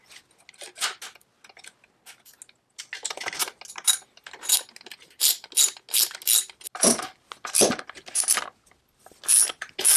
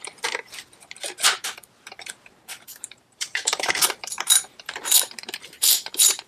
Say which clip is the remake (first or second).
second